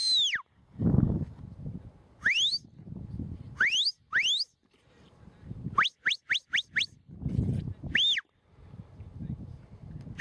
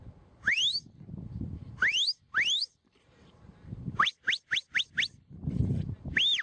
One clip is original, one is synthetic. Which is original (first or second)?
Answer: first